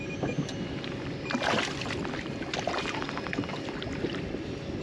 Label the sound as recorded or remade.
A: recorded